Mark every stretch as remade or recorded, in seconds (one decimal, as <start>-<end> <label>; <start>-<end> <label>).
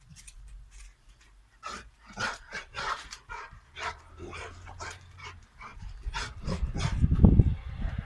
0.0-8.1 remade